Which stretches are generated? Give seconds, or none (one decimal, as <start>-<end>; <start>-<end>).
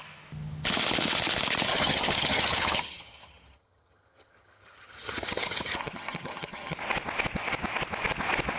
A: 1.7-6.8